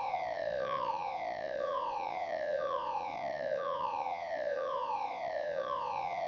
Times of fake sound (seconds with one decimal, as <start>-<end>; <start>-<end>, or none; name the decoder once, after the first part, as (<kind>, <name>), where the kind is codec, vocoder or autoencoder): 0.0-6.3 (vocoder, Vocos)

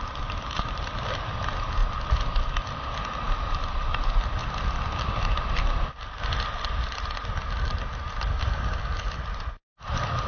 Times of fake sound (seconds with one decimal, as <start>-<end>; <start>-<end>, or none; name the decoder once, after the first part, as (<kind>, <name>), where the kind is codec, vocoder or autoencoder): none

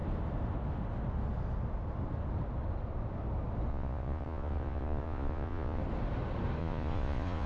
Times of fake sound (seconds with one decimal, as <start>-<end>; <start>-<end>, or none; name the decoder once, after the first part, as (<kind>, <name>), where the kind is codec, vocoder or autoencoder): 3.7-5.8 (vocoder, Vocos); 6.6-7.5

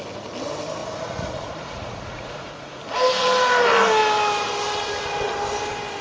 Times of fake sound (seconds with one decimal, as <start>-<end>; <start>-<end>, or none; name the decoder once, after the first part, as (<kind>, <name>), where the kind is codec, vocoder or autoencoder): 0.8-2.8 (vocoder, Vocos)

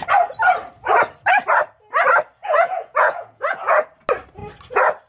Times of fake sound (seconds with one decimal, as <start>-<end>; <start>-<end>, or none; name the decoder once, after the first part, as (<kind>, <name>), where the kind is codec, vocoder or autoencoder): 2.4-3.7 (vocoder, Vocos)

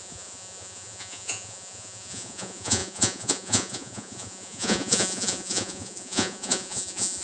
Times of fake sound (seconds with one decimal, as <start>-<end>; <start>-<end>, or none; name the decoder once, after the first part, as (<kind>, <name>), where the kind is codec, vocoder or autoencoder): 0.0-7.2 (vocoder, Vocos)